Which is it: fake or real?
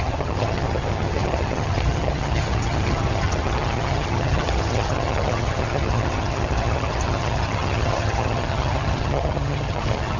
fake